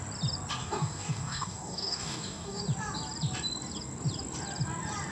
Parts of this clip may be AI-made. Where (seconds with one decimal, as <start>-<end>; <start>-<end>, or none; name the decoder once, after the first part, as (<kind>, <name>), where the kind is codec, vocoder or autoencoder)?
0.6-2.6 (codec, DAC)